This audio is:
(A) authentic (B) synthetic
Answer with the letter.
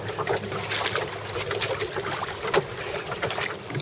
A